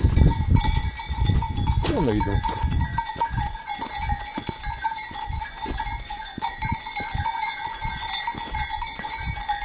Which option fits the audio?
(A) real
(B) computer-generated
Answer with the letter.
B